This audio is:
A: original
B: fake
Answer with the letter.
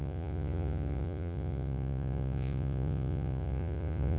B